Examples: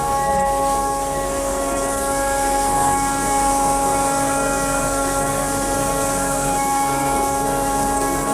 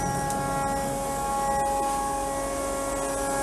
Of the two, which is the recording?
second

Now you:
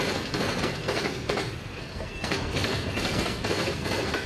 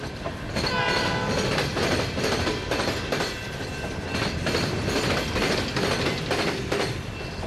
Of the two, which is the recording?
second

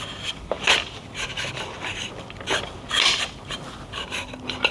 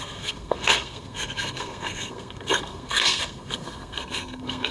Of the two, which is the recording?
first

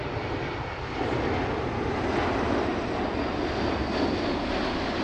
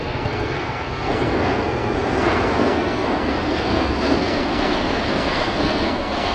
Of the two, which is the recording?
first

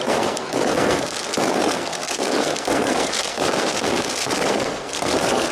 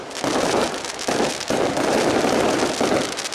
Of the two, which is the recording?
second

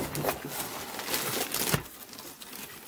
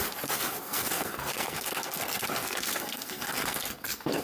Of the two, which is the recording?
first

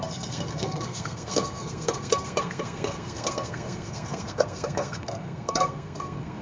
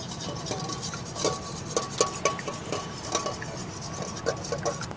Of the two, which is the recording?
second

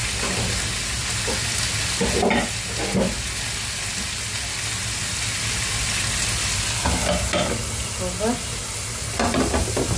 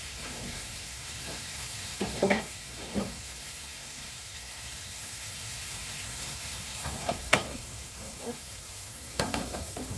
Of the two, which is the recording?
first